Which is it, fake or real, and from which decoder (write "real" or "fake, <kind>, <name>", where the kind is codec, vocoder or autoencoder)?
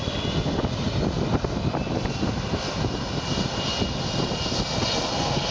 real